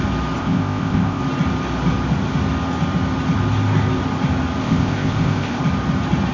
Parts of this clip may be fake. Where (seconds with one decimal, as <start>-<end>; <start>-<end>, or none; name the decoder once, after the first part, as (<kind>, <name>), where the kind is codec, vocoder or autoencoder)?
0.4-1.2 (codec, ZipCodec); 4.6-5.6